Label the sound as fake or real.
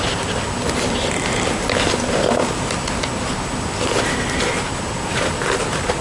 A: real